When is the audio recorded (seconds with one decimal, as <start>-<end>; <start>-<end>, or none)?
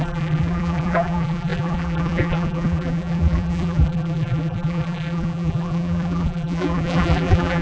none